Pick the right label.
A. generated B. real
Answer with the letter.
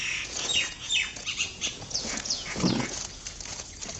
A